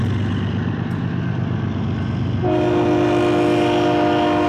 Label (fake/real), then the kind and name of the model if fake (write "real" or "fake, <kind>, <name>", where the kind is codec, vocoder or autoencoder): real